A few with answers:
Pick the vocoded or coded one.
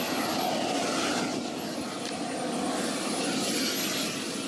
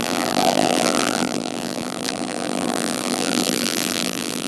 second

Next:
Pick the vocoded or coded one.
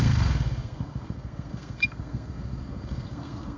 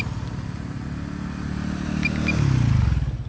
first